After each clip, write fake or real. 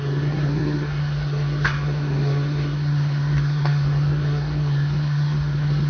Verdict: fake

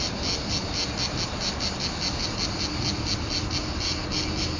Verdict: real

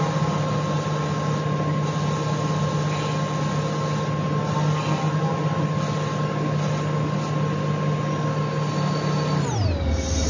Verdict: real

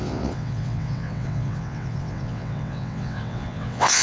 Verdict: fake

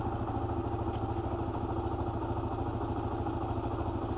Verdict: real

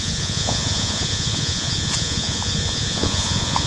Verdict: fake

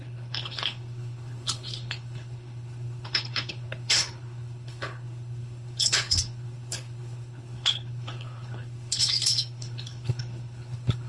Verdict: fake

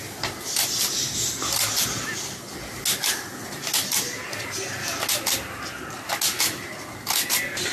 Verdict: real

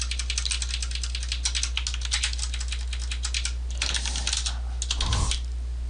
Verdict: real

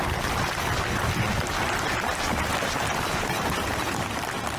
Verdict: real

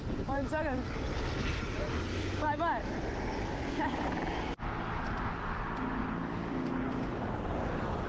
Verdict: real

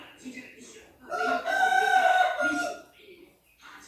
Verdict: real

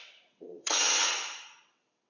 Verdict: fake